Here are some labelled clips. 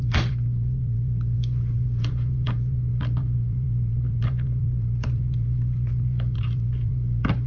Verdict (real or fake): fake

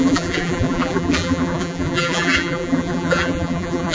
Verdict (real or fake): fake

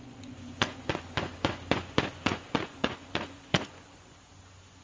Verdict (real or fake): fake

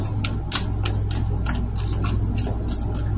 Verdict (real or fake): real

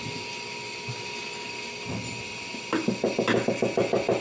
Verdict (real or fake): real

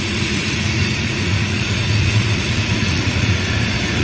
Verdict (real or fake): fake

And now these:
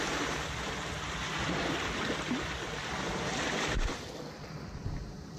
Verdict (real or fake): real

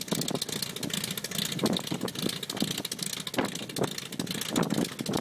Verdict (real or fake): real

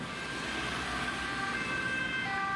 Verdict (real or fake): real